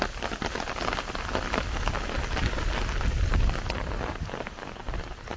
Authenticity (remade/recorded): recorded